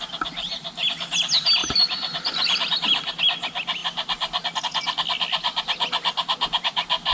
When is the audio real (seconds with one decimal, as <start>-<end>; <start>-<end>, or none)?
0.0-1.6; 3.2-7.1